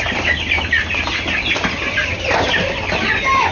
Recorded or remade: recorded